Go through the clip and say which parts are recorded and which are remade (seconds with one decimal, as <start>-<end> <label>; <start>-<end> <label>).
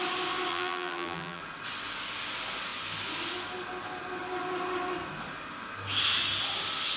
0.0-0.5 recorded; 0.5-1.4 remade; 1.4-7.0 recorded